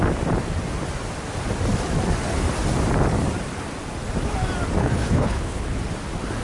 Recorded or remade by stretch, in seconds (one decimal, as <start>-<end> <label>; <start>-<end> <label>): 0.0-4.8 recorded; 4.8-5.8 remade; 5.8-6.4 recorded